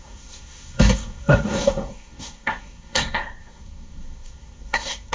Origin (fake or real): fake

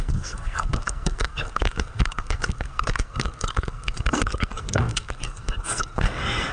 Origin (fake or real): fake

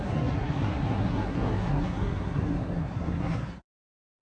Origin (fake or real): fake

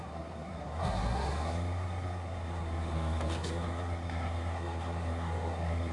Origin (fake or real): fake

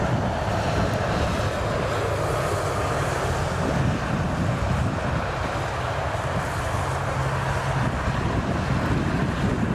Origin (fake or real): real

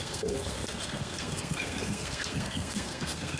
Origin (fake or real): fake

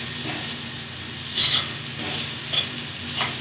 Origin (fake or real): real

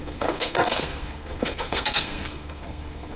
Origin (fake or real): fake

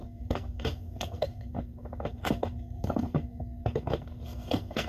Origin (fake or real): fake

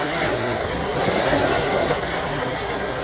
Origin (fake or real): fake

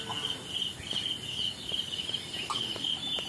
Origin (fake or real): real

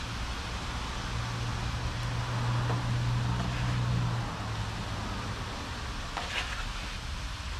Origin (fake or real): real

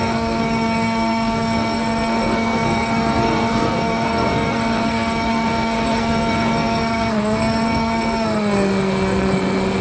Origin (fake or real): fake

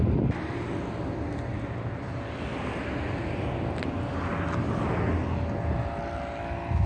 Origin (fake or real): real